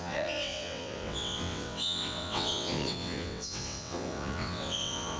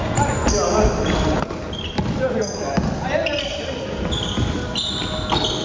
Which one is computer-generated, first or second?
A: first